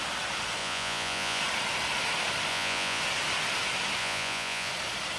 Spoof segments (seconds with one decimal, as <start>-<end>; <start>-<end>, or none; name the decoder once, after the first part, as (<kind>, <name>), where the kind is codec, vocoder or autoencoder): 0.6-1.4 (vocoder, Vocos); 2.5-3.0; 4.0-4.7